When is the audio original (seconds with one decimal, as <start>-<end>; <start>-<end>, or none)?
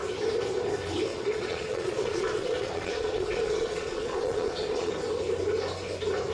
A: 0.0-1.1; 4.9-6.3